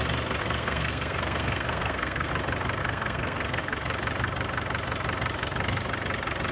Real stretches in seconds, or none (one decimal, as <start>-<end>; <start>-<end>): 0.0-0.4; 2.3-2.8; 3.6-6.5